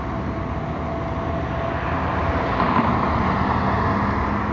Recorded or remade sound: recorded